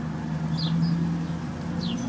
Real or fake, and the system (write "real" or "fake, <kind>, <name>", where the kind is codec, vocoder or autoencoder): real